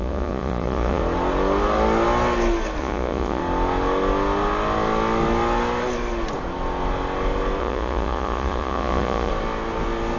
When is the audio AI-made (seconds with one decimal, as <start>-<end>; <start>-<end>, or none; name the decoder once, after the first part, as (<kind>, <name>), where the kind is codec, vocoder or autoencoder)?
0.0-1.0 (vocoder, Vocos); 2.8-3.4; 7.6-9.3